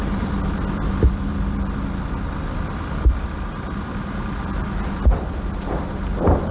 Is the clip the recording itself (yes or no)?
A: no